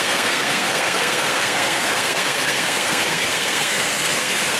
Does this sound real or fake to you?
fake